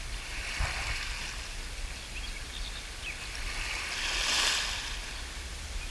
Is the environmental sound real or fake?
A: real